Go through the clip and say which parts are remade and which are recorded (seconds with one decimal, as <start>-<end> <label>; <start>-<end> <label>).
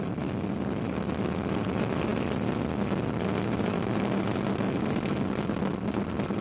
0.0-6.4 recorded